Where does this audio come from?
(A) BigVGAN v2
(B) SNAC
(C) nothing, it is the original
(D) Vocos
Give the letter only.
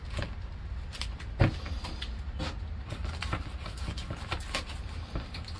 C